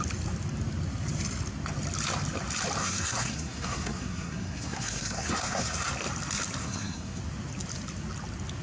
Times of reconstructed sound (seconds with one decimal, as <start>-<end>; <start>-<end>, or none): 2.8-5.9; 6.6-7.2